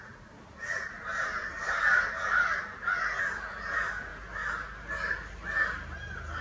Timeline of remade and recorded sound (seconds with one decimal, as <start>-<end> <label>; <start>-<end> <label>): 0.0-4.1 recorded; 4.1-5.7 remade; 5.7-6.4 recorded